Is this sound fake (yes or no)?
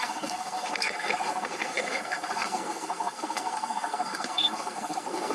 yes